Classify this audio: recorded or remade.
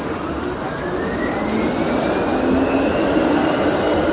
recorded